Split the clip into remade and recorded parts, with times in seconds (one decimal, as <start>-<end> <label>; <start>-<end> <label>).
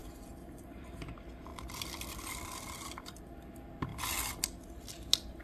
0.0-1.1 remade; 1.1-1.5 recorded; 1.5-3.2 remade; 3.2-5.4 recorded